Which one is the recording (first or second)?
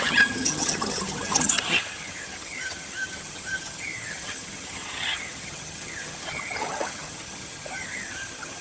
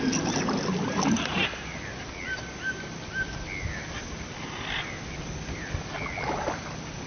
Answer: second